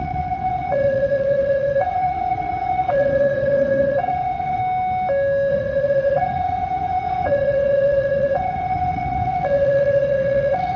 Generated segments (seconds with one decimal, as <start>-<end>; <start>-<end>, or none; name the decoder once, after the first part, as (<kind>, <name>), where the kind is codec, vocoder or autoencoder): 0.0-4.6 (vocoder, WaveNeXt); 5.5-10.8